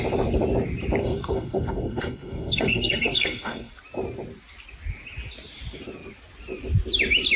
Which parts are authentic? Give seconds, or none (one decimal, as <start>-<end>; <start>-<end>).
0.0-1.0; 3.7-7.4